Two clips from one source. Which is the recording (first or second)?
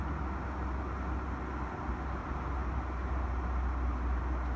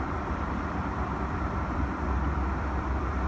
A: first